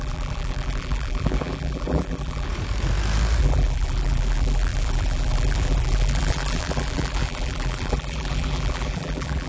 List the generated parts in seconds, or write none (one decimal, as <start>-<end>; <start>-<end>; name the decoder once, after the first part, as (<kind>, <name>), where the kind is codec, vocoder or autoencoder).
0.0-2.5 (vocoder, BigVGAN v2); 3.4-9.5